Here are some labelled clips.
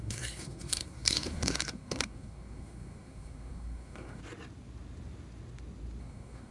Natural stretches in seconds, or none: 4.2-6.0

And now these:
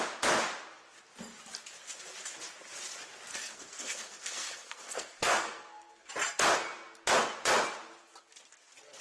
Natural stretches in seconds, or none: 0.0-3.3; 6.1-9.0

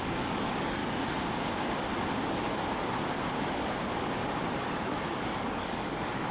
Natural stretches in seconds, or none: 0.8-4.6

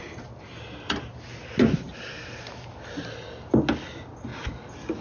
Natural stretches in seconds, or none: 0.0-5.0